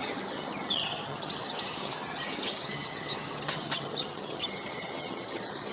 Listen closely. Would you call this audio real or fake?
fake